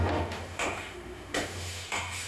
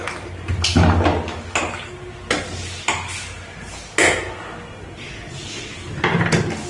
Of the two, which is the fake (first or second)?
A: first